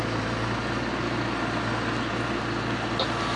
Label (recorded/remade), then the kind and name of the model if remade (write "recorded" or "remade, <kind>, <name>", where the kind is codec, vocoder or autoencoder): recorded